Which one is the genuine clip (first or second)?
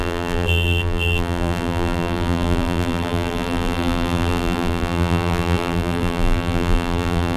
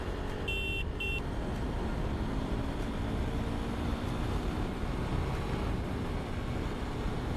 second